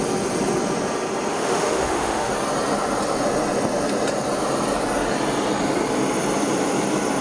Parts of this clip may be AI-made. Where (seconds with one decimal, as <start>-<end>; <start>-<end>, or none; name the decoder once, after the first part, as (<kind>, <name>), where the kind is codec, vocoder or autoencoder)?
1.3-2.3 (autoencoder, DAC-VAE)